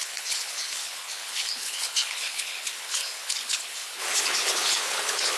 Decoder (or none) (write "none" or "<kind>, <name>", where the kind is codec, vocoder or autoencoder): codec, HILCodec